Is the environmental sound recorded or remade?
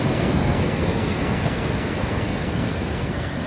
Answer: remade